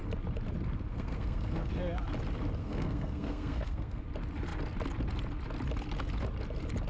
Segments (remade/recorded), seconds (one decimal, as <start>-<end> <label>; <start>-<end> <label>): 0.0-0.9 recorded; 0.9-1.7 remade; 1.7-2.6 recorded; 2.6-4.0 remade; 4.0-6.9 recorded